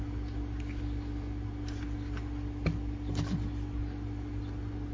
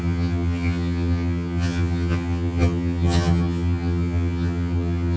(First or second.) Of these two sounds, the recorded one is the first